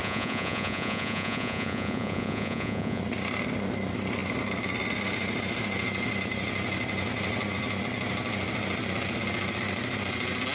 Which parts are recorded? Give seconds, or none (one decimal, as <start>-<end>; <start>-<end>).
3.0-10.5